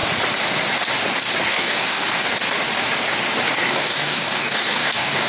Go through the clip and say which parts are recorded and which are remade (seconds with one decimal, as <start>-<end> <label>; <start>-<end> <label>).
0.0-1.5 recorded; 1.5-2.3 remade; 2.3-3.7 recorded; 3.7-5.3 remade